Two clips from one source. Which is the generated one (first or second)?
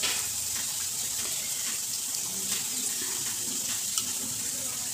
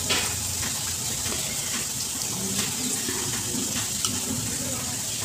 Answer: first